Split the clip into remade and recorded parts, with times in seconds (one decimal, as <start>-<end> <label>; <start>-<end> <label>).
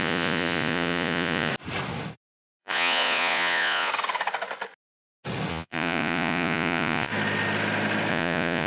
0.0-1.5 remade; 1.5-2.6 recorded; 2.6-3.9 remade; 3.9-5.5 recorded; 5.5-7.1 remade; 7.1-8.1 recorded; 8.1-8.7 remade